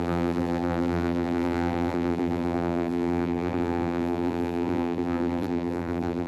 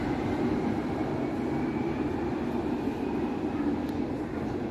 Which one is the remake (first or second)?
first